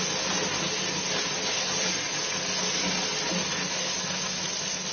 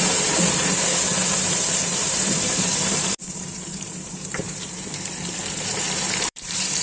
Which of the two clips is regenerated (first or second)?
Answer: second